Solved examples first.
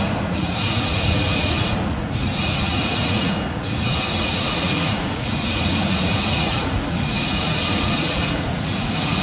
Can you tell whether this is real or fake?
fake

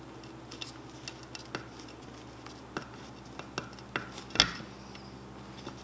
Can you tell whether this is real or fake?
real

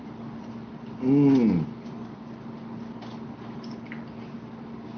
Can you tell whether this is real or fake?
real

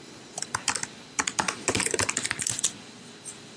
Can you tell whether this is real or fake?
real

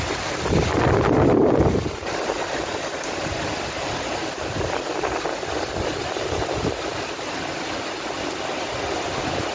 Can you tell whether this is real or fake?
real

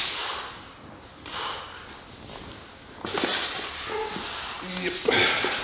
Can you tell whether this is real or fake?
real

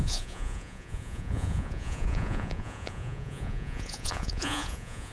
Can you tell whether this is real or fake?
fake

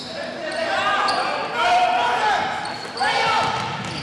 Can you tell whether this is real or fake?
real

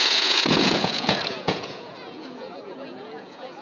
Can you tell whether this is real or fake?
fake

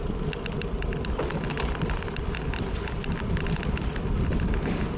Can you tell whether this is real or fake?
real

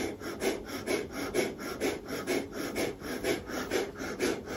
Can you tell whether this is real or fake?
real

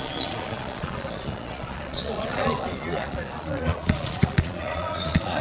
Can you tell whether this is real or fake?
fake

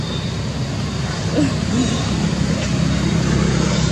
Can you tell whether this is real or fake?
real